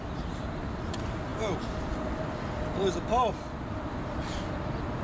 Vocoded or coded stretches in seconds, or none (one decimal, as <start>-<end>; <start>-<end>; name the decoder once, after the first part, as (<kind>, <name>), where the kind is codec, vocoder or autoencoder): none